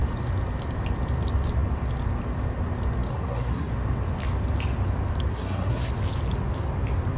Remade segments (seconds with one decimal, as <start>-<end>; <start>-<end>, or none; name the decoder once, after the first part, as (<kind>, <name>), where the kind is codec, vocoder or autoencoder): 3.1-3.7 (codec, SNAC); 5.3-5.9